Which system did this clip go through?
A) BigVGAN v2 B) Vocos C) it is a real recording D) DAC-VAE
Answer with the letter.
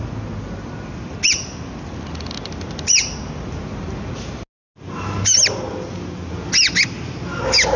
C